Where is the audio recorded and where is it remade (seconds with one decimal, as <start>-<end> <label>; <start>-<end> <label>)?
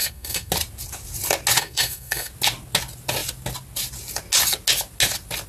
0.0-0.5 remade; 0.5-1.6 recorded; 1.6-2.3 remade; 2.3-5.5 recorded